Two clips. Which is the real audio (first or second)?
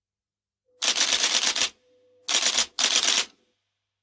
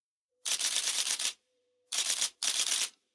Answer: first